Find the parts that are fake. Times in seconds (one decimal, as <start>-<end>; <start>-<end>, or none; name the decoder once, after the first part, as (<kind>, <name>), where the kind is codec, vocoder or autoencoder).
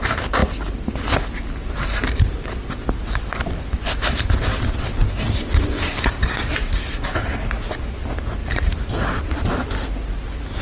none